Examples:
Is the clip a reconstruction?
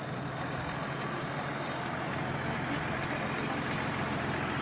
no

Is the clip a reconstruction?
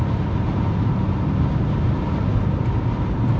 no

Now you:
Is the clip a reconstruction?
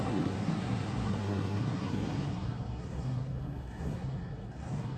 yes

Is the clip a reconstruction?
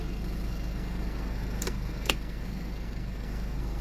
yes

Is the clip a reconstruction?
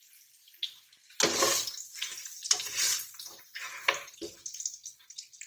no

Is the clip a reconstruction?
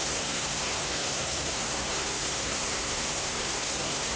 yes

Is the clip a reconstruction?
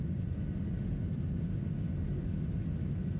no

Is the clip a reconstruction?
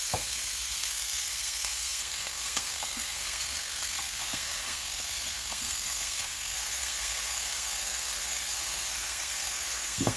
yes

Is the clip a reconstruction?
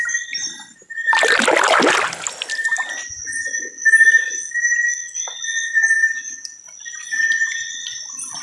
no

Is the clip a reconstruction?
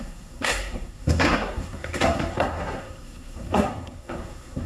yes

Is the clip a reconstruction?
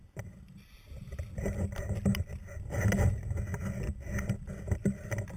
no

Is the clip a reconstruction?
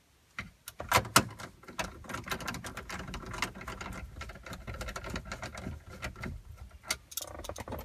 no